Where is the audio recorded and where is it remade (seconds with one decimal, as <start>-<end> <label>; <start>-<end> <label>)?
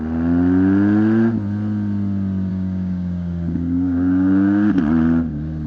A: 0.0-2.5 recorded; 2.5-4.8 remade; 4.8-5.7 recorded